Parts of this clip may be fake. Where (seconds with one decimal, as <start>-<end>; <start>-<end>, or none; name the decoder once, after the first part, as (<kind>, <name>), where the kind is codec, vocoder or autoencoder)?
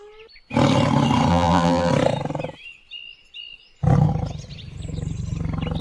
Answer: 1.3-1.9 (vocoder, BigVGAN v2)